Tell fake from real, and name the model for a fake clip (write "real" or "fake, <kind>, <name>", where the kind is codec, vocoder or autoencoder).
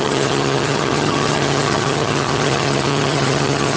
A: fake, vocoder, HiFi-GAN